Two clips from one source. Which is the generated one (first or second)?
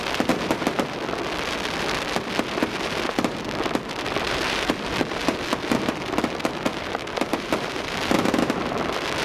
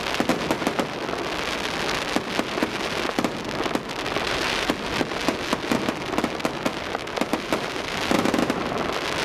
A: first